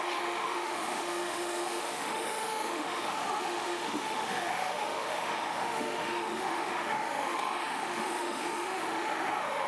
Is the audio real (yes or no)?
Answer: no